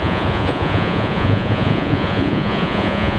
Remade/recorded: remade